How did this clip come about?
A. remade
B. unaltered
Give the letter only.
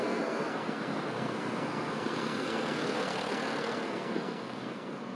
A